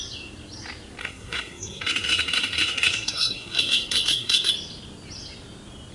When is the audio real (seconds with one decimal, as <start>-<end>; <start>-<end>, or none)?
0.0-1.0; 4.5-5.9